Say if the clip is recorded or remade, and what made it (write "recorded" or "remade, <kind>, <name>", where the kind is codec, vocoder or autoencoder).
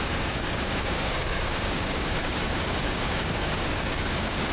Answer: remade, codec, DAC